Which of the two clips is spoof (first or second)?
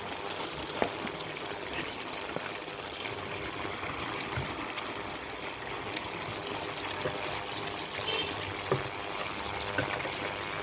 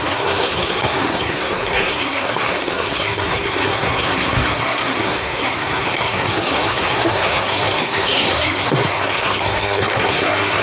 second